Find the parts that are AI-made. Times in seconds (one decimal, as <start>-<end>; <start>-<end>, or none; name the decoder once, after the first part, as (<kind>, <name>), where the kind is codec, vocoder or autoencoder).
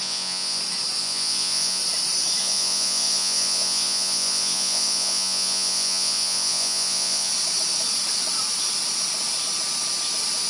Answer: 0.0-0.6 (vocoder, Vocos); 1.0-1.8; 2.4-7.3